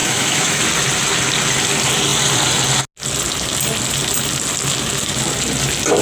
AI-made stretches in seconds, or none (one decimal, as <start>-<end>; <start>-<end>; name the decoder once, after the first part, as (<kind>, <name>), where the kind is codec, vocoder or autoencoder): 0.0-0.6 (autoencoder, DAC-VAE)